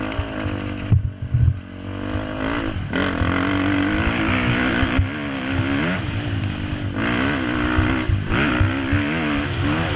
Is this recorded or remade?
recorded